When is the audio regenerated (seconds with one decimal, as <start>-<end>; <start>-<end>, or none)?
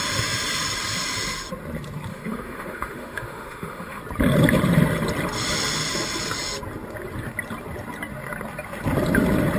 2.1-4.0